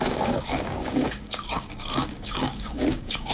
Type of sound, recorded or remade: remade